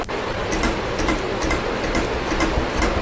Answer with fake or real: real